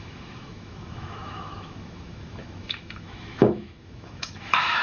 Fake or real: fake